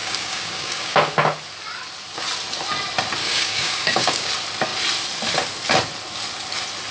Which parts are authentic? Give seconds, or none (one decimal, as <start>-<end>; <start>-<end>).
1.0-3.2; 4.3-6.9